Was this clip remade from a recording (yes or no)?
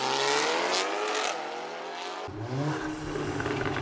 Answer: no